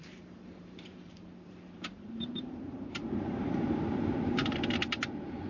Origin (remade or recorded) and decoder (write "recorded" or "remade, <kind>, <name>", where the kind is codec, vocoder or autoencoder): remade, vocoder, BigVGAN v2